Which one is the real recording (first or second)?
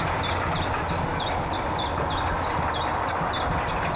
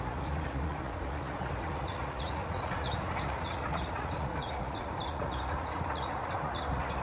first